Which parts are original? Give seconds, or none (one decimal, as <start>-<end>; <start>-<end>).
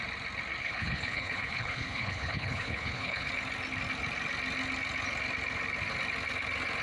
0.0-0.6; 3.3-6.8